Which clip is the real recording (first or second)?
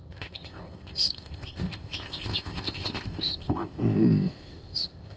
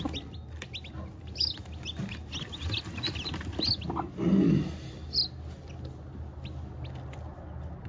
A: second